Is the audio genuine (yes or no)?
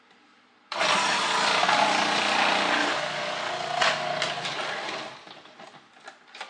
yes